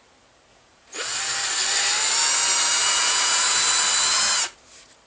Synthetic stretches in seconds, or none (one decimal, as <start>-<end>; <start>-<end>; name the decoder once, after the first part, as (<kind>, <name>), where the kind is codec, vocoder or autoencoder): 0.5-1.2 (vocoder, Vocos); 2.8-3.7